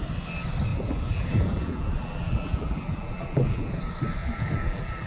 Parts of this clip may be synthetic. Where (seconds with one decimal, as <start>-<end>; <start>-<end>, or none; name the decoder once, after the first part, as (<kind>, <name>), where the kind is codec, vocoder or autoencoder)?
0.7-3.8 (vocoder, BigVGAN v2); 4.2-5.1